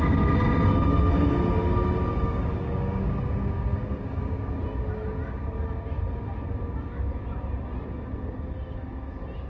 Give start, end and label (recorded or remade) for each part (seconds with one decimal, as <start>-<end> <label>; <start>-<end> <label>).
0.0-2.1 recorded; 2.1-4.5 remade; 4.5-9.5 recorded